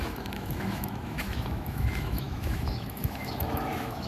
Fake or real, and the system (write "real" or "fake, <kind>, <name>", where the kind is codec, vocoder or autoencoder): fake, autoencoder, DAC-VAE